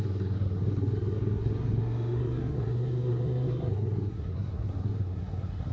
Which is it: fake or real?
fake